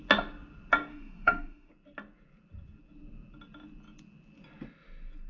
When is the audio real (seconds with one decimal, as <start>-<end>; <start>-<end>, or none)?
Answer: 0.0-0.9; 1.7-5.3